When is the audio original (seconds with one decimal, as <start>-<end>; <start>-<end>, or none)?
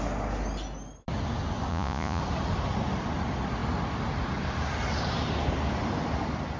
0.0-1.7; 2.2-6.6